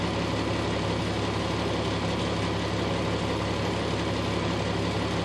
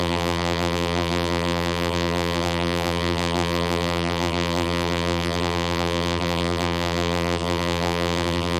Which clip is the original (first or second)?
first